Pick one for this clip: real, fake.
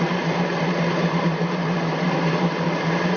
fake